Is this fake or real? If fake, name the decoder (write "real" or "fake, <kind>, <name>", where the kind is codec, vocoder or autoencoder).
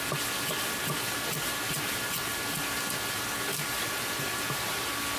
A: real